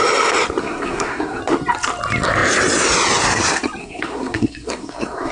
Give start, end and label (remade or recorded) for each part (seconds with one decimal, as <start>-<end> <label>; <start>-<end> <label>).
0.0-0.6 recorded; 0.6-1.4 remade; 1.4-3.8 recorded; 3.8-5.3 remade